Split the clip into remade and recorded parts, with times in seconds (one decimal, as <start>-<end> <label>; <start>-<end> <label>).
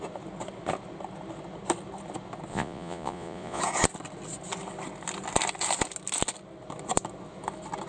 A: 0.0-2.5 recorded; 2.5-3.6 remade; 3.6-7.9 recorded